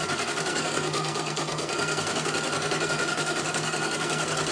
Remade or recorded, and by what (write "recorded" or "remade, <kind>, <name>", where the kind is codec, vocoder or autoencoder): remade, codec, SNAC